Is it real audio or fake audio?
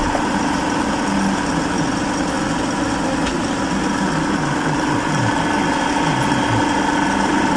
real